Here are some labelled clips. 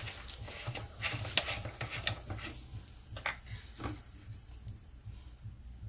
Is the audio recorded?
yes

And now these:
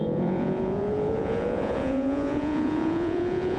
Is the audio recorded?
no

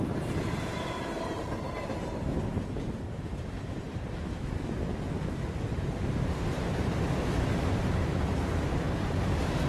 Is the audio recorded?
yes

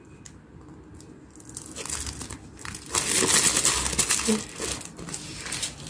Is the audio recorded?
yes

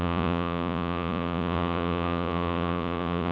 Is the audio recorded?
no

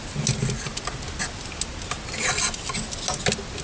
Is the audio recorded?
yes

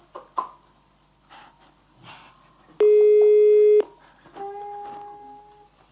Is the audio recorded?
yes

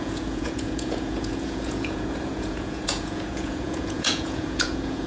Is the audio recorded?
no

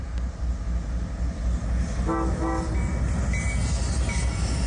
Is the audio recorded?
yes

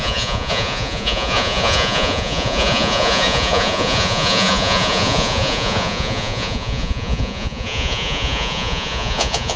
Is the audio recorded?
no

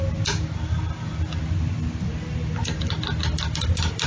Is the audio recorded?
yes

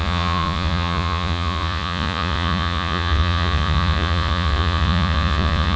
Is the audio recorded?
no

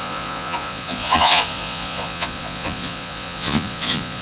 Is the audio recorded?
no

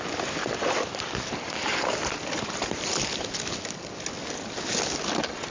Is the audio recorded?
yes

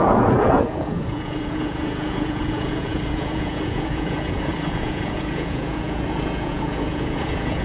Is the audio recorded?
no